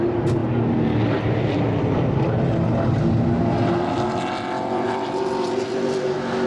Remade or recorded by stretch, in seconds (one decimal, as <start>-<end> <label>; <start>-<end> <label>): 0.0-6.5 recorded